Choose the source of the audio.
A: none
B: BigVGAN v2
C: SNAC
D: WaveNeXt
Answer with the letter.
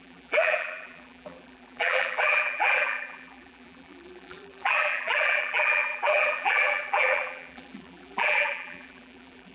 B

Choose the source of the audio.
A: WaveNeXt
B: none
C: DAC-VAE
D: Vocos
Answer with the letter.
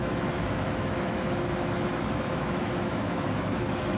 C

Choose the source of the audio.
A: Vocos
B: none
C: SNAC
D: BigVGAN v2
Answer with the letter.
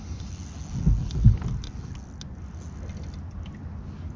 B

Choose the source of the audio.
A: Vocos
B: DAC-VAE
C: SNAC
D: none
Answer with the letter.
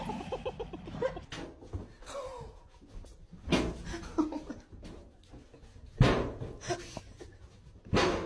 D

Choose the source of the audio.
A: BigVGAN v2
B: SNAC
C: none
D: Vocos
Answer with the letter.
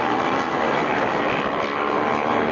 C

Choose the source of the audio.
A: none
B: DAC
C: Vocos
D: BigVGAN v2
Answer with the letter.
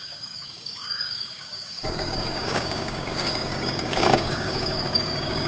B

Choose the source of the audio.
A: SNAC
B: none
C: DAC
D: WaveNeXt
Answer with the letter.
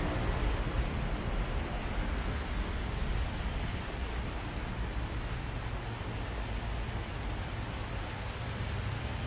B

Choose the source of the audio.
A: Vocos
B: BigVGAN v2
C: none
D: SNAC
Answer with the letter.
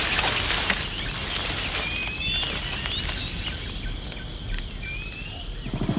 C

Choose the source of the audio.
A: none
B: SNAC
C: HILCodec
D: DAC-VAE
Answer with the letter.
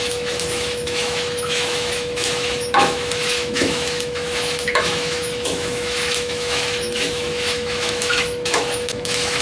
D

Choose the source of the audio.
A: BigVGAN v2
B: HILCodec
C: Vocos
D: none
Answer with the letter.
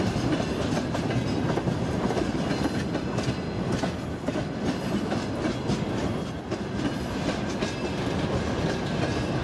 D